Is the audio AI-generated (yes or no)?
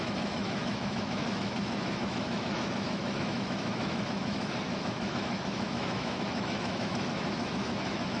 yes